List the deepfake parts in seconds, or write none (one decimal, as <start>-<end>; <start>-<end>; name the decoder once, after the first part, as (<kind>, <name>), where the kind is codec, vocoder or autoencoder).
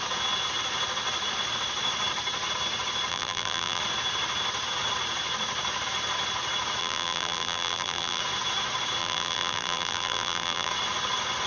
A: 3.1-3.8 (vocoder, BigVGAN v2); 6.8-8.2; 9.0-10.7